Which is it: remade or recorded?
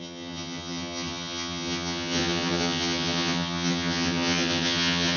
remade